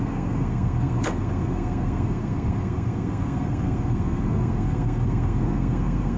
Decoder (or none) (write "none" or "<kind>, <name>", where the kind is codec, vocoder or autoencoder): codec, SNAC